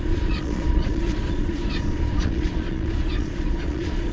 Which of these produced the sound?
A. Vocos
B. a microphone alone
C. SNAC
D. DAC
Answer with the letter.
A